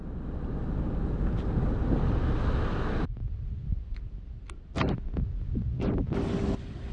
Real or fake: real